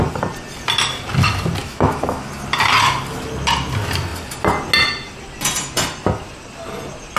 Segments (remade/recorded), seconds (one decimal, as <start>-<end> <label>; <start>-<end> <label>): 0.0-1.6 recorded; 1.6-2.3 remade; 2.3-7.2 recorded